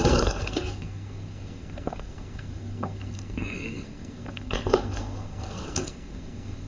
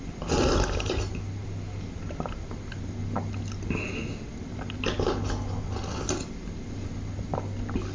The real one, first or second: second